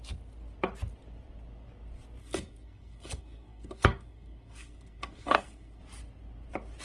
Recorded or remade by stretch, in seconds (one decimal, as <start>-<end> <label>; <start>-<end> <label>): 0.0-2.2 recorded; 2.2-5.8 remade; 5.8-6.8 recorded